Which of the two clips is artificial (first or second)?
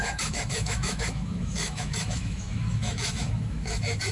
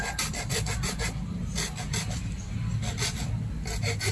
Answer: first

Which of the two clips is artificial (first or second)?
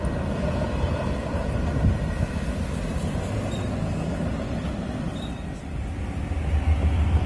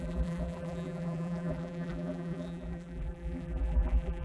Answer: second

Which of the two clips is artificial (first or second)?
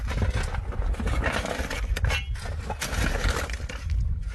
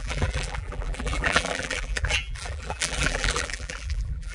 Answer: second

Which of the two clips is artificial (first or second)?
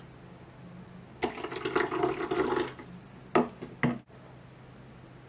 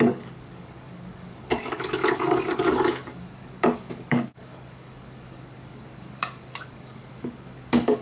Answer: second